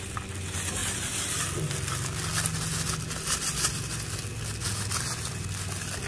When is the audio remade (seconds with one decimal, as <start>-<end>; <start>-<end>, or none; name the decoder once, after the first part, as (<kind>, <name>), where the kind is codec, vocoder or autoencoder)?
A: none